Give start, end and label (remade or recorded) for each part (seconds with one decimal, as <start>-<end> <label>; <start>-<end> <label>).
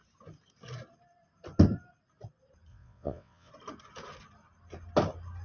0.0-2.7 recorded; 2.7-3.5 remade; 3.5-5.4 recorded